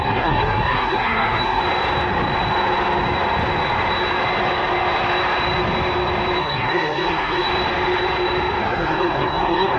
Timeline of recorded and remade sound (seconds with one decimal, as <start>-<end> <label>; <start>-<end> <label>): 0.0-1.6 remade; 1.6-6.4 recorded; 6.4-7.5 remade; 7.5-8.6 recorded; 8.6-9.8 remade